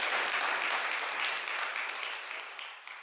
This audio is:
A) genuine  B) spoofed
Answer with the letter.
A